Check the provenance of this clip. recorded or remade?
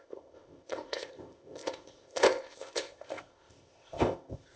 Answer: remade